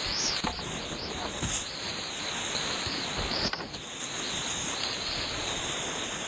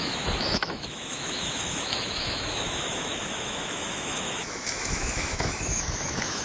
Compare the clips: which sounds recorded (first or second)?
first